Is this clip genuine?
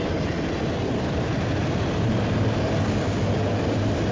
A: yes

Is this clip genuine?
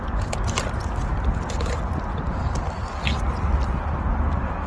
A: yes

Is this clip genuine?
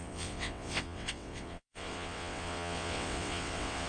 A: no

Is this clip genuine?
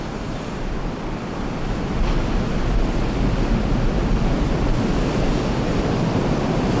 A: yes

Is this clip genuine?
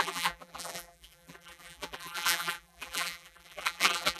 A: no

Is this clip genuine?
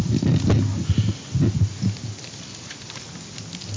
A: yes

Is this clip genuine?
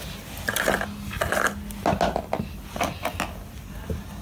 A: yes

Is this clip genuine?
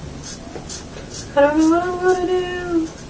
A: yes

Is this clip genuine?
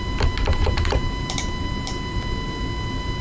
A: no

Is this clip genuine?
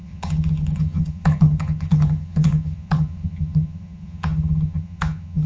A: no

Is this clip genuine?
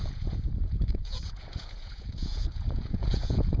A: no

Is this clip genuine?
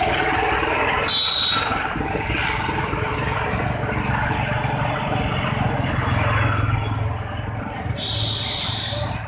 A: yes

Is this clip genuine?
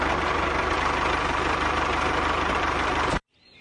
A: no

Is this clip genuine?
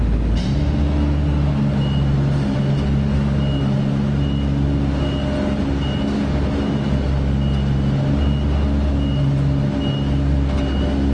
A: yes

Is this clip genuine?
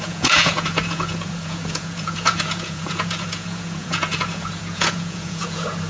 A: no